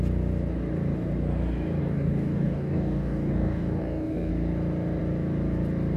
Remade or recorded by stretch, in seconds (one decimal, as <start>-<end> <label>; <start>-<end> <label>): 0.0-1.8 recorded; 1.8-4.3 remade; 4.3-6.0 recorded